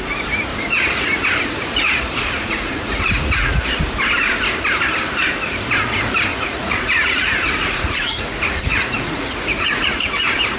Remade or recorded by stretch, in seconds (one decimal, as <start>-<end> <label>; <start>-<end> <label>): 0.0-0.5 recorded; 0.5-3.6 remade; 3.6-6.3 recorded; 6.3-10.0 remade; 10.0-10.6 recorded